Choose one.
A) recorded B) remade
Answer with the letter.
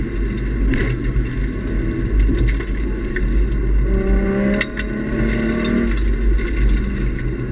A